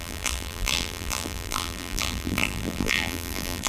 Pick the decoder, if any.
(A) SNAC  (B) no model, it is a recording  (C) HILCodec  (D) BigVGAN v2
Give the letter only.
D